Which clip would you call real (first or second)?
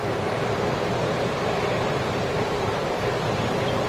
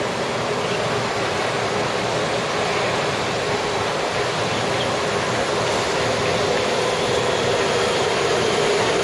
second